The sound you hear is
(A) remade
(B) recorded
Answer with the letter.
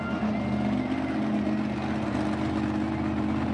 B